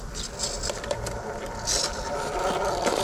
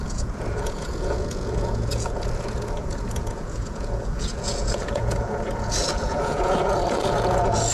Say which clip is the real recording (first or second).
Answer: first